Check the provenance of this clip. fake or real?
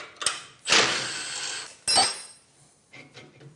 real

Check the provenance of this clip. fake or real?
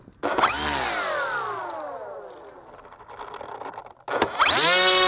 real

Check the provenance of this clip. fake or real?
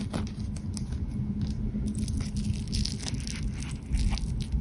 real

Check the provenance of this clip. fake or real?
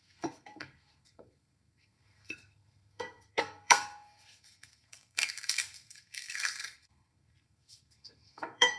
fake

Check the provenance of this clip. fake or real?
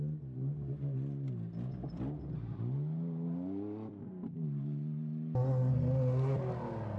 real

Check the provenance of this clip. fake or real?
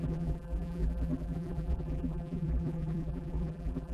fake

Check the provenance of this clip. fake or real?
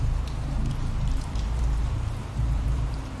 fake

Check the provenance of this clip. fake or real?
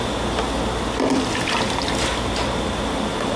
real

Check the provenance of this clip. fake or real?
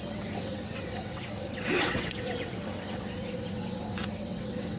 fake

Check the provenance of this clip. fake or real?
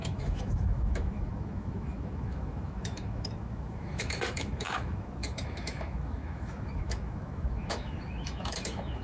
fake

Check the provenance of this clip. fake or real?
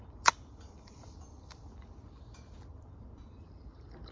fake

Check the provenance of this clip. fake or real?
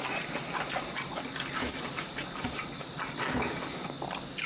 real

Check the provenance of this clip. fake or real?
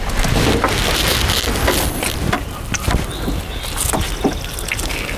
real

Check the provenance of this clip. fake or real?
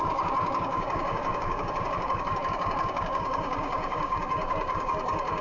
fake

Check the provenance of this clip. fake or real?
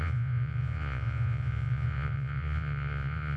fake